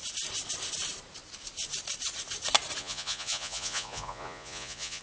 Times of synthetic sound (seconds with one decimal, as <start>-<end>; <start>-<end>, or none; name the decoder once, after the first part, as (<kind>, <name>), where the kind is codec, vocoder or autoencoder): 2.8-5.0 (vocoder, Vocos)